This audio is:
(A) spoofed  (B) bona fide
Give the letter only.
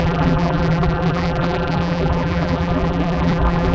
A